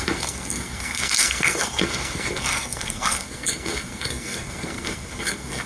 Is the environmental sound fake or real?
fake